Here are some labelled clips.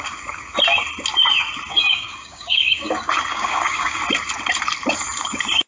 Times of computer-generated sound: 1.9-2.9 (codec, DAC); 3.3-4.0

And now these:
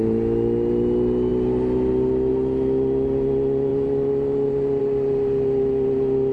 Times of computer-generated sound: none